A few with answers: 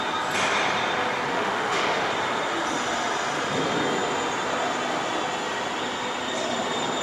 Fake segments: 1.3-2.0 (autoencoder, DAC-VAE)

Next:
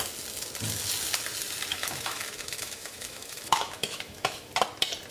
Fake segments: 1.7-4.5 (autoencoder, DAC-VAE)

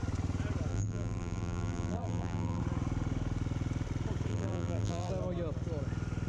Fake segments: 0.7-2.6 (vocoder, BigVGAN v2); 4.3-5.1

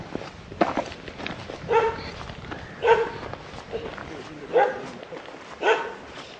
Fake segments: 4.0-4.5 (codec, DAC)

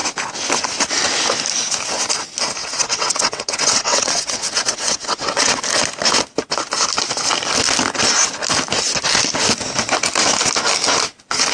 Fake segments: 2.6-5.6 (vocoder, WaveNeXt)

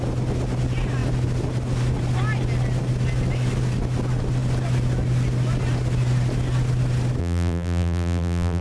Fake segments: 7.2-8.6 (vocoder, BigVGAN v2)

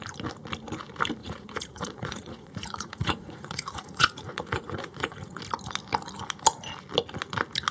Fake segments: 1.2-5.4 (vocoder, Vocos)

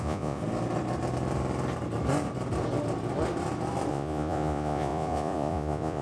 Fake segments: 0.0-0.4 (vocoder, Vocos); 3.9-6.0